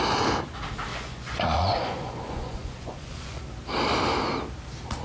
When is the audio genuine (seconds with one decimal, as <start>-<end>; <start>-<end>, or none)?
0.0-0.9; 3.4-5.0